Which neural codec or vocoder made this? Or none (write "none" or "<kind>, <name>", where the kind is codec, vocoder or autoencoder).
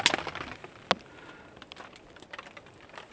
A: none